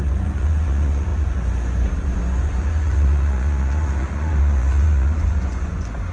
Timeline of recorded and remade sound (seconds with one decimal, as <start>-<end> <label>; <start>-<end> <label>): 0.0-6.1 remade